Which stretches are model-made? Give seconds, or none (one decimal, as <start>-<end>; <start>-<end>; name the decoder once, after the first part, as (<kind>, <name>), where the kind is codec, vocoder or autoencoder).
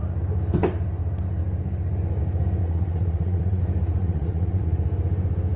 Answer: 2.6-3.6 (vocoder, WaveNeXt); 4.0-4.7